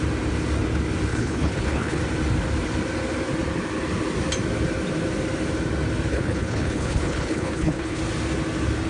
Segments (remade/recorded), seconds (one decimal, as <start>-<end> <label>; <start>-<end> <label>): 0.0-1.1 recorded; 1.1-2.0 remade; 2.0-6.1 recorded; 6.1-8.0 remade; 8.0-8.9 recorded